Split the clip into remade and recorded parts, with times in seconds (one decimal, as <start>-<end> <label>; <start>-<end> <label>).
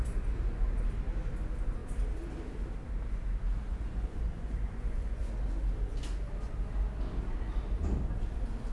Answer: 0.0-3.7 recorded; 3.7-5.3 remade; 5.3-8.7 recorded